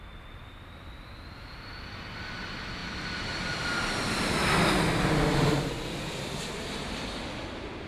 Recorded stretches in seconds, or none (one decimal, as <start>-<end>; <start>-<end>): 0.0-7.9